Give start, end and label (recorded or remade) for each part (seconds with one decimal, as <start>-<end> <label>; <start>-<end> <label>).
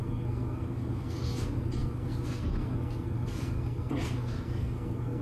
0.0-5.2 remade